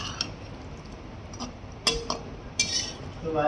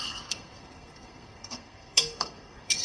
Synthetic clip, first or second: second